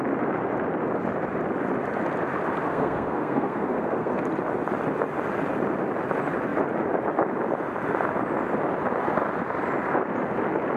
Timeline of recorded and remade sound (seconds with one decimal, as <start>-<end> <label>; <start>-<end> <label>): 0.0-2.7 recorded; 2.7-4.2 remade; 4.2-10.8 recorded